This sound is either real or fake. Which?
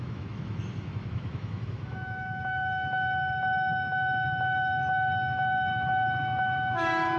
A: fake